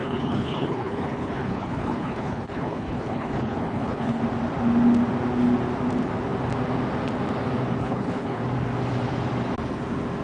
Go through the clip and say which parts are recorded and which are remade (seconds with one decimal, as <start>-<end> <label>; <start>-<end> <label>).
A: 0.0-4.2 remade; 4.2-7.8 recorded; 7.8-8.4 remade; 8.4-10.2 recorded